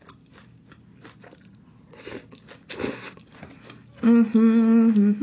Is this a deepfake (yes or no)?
no